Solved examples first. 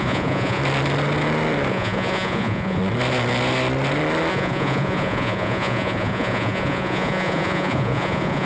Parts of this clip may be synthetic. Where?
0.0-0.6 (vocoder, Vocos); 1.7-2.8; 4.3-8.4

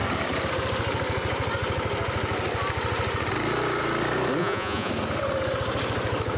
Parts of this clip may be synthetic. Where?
4.4-4.9 (vocoder, Vocos)

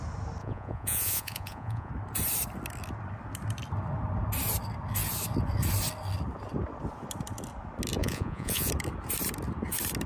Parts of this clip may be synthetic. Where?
0.4-1.9 (vocoder, Vocos); 8.0-8.7

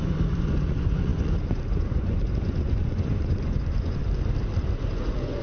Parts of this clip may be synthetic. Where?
0.0-4.0 (vocoder, Vocos); 4.9-5.4

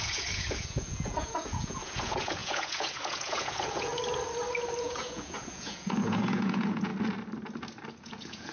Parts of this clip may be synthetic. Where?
0.0-3.9 (vocoder, Vocos); 4.8-6.9; 7.9-8.5

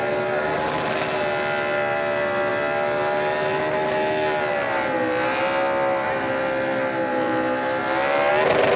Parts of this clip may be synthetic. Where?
none

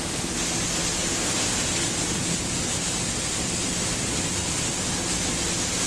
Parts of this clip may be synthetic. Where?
none

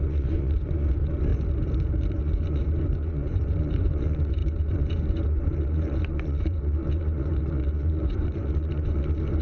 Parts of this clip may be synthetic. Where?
0.0-1.3 (vocoder, Vocos); 2.2-9.4